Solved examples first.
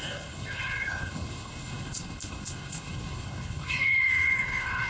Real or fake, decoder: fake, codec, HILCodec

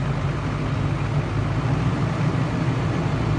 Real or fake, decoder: real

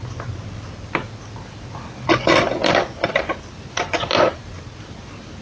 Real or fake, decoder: real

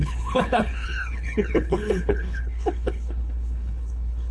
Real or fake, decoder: fake, codec, HILCodec